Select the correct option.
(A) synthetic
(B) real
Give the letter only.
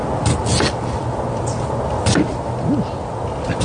B